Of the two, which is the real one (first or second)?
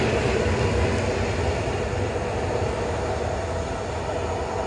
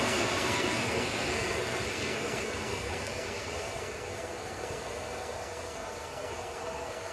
first